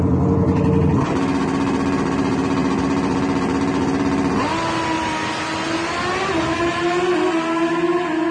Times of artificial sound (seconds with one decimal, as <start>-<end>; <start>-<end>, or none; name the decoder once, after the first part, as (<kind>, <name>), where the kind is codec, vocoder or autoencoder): none